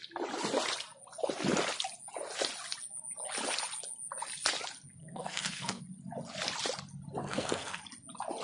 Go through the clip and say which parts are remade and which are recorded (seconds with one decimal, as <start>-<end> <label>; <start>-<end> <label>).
0.0-5.0 recorded; 5.0-5.8 remade; 5.8-7.2 recorded; 7.2-7.8 remade; 7.8-8.4 recorded